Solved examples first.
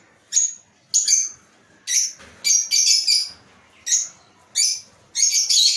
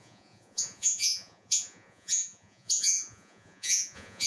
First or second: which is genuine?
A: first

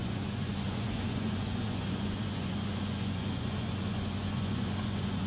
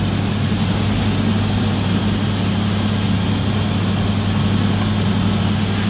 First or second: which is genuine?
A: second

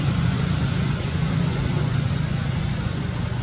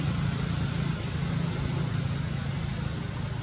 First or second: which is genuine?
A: second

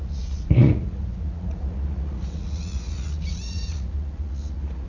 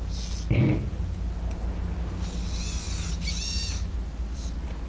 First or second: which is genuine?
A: second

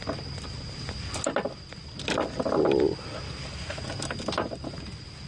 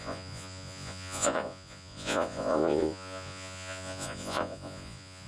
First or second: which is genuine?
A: first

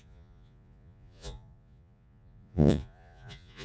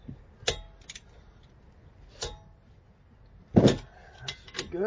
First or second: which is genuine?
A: second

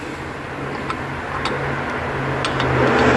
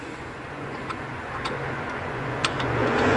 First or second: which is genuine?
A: first